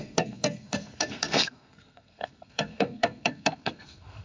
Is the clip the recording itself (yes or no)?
no